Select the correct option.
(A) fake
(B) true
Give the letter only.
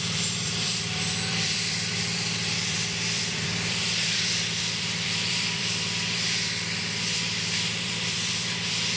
A